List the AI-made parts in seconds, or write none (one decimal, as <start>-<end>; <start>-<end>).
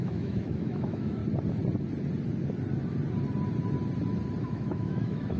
0.0-1.2; 4.4-5.4